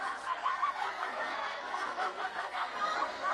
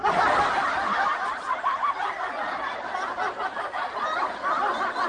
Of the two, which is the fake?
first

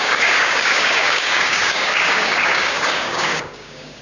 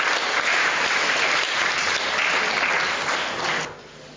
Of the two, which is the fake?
first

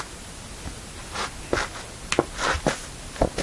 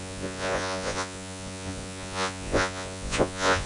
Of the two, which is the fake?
second